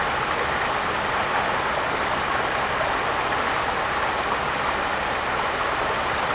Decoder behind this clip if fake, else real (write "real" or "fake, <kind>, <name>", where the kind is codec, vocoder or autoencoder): real